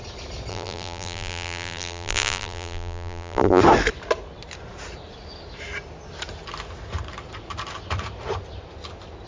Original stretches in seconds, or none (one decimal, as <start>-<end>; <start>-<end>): 0.0-0.5; 3.6-9.3